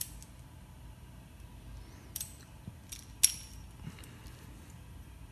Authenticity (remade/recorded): recorded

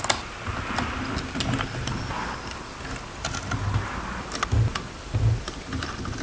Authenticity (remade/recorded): recorded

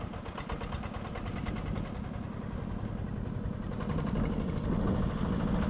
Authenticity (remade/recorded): recorded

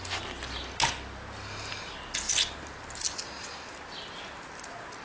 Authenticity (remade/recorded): recorded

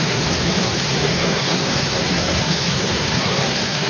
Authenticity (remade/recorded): remade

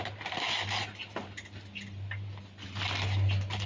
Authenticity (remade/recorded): recorded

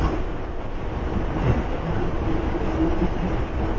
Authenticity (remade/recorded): recorded